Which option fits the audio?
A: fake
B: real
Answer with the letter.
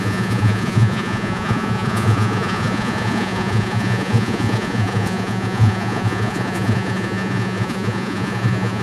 A